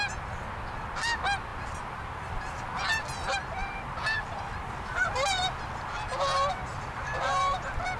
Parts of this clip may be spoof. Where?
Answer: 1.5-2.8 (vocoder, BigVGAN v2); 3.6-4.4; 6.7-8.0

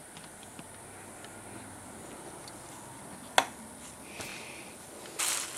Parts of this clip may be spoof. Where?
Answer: 4.3-4.8 (vocoder, BigVGAN v2)